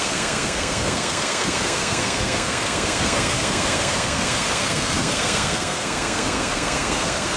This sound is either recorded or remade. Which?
remade